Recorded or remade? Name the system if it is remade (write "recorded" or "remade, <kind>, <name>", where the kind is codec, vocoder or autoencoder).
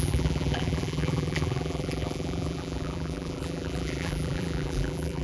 remade, vocoder, BigVGAN v2